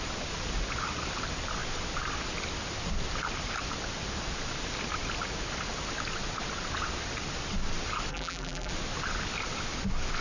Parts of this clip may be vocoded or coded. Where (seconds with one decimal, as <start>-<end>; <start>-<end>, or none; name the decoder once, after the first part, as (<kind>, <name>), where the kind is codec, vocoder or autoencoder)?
8.1-8.7 (vocoder, BigVGAN v2)